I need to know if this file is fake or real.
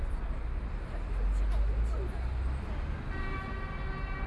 real